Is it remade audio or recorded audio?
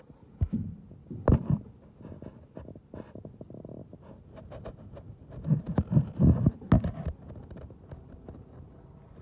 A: recorded